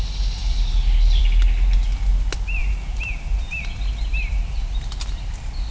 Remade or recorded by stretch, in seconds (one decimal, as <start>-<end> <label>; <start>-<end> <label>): 0.0-2.6 recorded; 2.6-3.6 remade; 3.6-4.1 recorded; 4.1-4.7 remade; 4.7-5.7 recorded